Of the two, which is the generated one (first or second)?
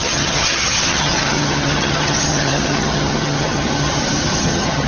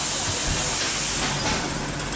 first